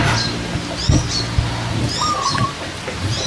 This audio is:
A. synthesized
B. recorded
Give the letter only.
B